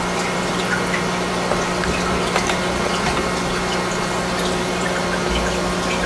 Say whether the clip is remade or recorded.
recorded